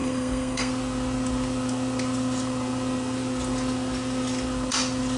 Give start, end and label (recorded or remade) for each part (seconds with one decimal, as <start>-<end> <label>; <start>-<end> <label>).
0.0-0.7 remade; 0.7-5.2 recorded